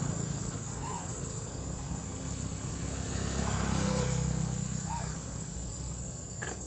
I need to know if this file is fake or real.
fake